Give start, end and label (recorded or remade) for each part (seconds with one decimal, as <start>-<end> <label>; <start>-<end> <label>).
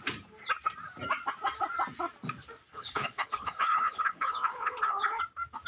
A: 0.0-2.7 recorded; 2.7-5.2 remade; 5.2-5.7 recorded